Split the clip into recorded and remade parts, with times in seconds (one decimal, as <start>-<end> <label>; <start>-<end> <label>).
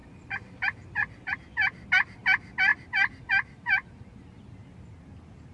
0.0-1.3 remade; 1.3-2.7 recorded; 2.7-4.3 remade; 4.3-5.5 recorded